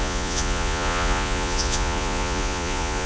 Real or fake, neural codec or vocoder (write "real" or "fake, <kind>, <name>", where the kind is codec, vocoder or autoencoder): fake, vocoder, Vocos